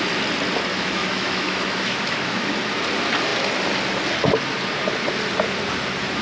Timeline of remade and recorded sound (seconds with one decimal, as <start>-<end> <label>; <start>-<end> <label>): 0.0-0.7 recorded; 0.7-2.5 remade; 2.5-6.2 recorded